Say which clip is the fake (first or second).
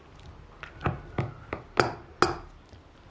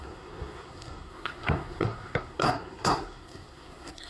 second